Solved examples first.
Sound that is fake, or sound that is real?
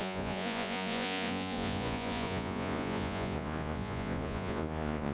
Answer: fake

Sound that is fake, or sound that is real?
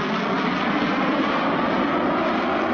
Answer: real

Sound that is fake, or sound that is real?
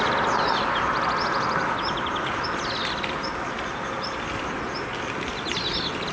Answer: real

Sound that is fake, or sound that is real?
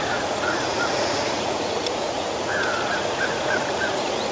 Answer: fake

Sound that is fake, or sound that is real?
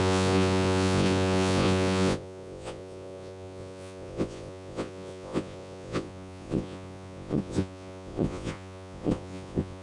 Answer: fake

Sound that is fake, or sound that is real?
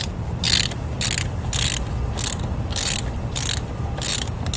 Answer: real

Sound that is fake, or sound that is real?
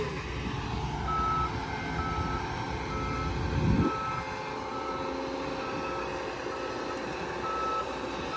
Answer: real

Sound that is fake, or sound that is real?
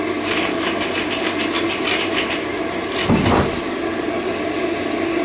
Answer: real